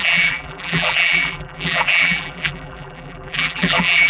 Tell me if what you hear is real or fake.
fake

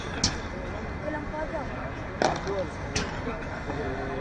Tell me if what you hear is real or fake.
real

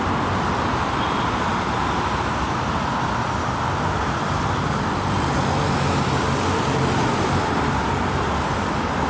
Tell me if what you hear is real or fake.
real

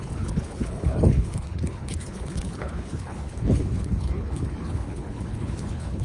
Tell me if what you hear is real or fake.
fake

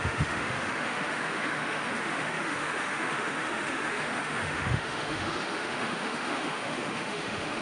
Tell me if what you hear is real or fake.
fake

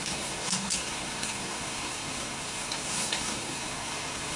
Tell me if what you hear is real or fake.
fake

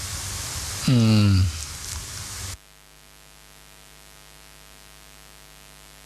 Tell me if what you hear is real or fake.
real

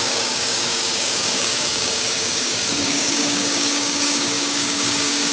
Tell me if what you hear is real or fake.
fake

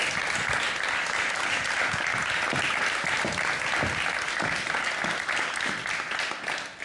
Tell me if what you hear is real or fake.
real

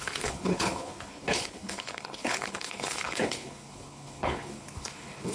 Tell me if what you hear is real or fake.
fake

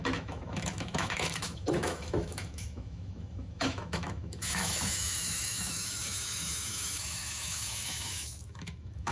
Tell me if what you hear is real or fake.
fake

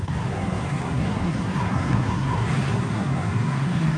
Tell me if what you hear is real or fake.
fake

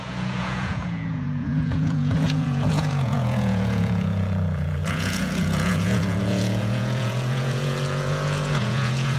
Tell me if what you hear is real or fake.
fake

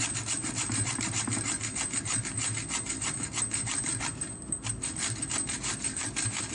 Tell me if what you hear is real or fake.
real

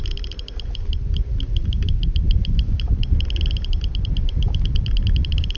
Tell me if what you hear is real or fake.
real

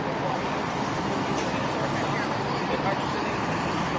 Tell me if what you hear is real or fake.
real